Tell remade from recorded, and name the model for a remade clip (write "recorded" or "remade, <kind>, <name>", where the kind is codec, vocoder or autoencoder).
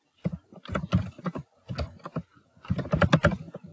recorded